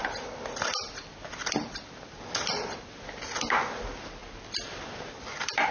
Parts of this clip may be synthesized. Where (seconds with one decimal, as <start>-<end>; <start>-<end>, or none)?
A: none